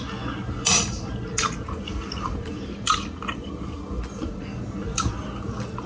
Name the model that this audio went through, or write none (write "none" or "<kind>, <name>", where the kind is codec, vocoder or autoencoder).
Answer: none